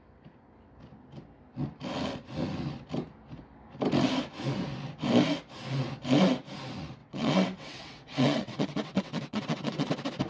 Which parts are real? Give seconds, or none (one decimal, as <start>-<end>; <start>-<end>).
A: 0.0-7.0; 9.9-10.3